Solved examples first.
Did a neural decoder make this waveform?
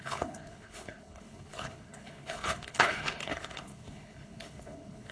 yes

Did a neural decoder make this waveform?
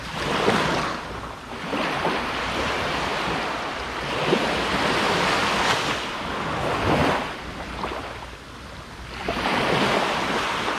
no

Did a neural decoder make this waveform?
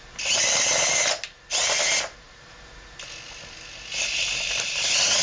no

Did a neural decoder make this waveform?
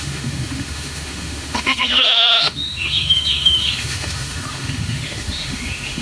yes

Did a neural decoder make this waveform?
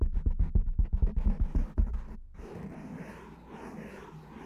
no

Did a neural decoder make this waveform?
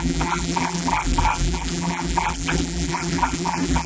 yes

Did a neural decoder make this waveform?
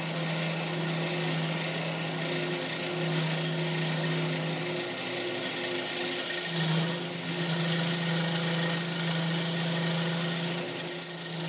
no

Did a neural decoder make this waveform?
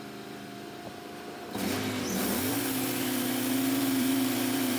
yes